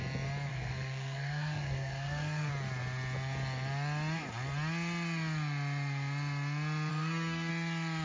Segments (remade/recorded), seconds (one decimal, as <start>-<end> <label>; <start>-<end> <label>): 0.0-0.5 recorded; 0.5-2.5 remade; 2.5-6.9 recorded; 6.9-7.5 remade; 7.5-8.0 recorded